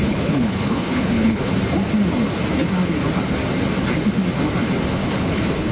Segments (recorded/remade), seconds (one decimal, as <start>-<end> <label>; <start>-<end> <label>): 0.0-1.5 remade; 1.5-4.9 recorded; 4.9-5.7 remade